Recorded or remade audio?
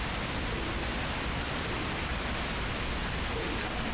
recorded